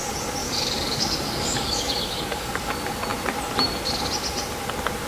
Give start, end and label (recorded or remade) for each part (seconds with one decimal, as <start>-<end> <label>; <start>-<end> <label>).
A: 0.0-0.4 recorded; 0.4-2.7 remade; 2.7-5.1 recorded

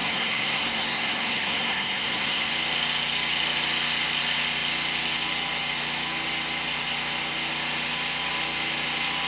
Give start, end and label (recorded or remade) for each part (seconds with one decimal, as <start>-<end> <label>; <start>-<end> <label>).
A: 0.0-2.5 remade; 2.5-9.3 recorded

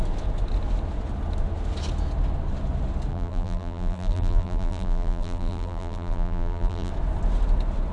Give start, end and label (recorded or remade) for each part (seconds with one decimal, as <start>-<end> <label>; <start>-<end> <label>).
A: 0.0-3.1 recorded; 3.1-6.9 remade; 6.9-7.9 recorded